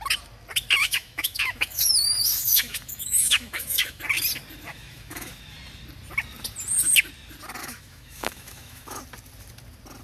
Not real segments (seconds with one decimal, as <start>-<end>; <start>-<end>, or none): 0.8-4.0; 4.7-5.3; 7.6-9.0